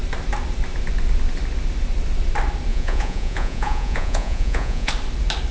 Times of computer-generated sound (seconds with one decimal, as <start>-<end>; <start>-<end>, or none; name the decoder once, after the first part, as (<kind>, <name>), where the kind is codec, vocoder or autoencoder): 2.7-4.9 (vocoder, Vocos)